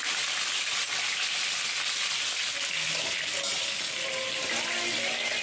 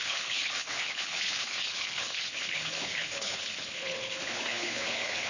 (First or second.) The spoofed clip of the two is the second